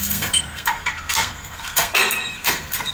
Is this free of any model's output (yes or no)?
no